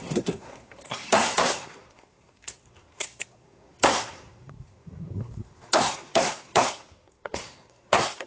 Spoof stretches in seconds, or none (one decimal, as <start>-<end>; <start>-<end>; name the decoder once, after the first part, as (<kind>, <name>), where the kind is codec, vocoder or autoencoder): 0.0-8.3 (codec, SNAC)